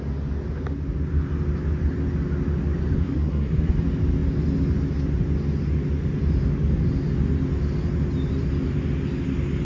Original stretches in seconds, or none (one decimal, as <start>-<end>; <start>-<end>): 0.0-3.0; 3.7-9.6